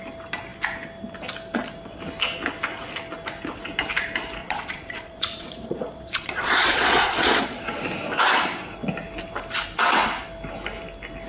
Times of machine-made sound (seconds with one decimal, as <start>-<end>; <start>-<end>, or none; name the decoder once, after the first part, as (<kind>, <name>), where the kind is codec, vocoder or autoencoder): 4.4-7.6 (vocoder, Vocos)